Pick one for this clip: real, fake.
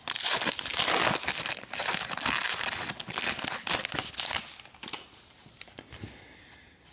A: real